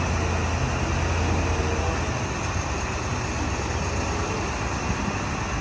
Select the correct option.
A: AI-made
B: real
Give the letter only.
B